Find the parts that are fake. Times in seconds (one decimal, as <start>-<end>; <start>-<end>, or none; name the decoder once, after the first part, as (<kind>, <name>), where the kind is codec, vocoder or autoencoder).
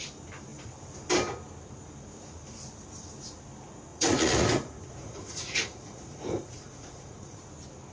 3.9-7.4 (vocoder, Vocos)